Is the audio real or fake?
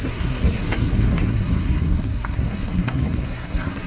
fake